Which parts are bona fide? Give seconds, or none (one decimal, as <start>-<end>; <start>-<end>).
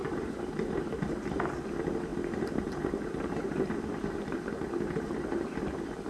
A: 1.5-2.1